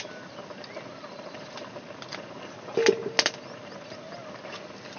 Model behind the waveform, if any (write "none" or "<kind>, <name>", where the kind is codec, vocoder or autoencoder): none